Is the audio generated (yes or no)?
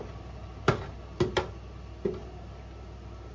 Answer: no